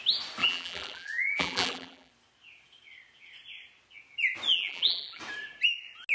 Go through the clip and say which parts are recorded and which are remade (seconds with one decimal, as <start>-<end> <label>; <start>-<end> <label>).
0.0-0.4 recorded; 0.4-2.1 remade; 2.1-4.5 recorded; 4.5-5.2 remade; 5.2-6.1 recorded